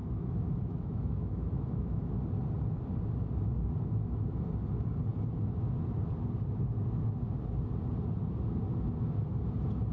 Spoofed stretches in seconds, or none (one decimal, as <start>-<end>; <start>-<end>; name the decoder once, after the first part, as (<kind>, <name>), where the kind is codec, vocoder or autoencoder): 0.0-2.2 (autoencoder, DAC-VAE)